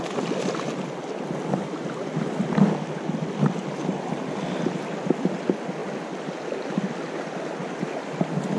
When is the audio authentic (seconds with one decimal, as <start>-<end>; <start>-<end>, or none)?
0.0-8.6